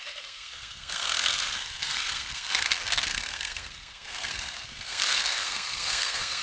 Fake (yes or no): yes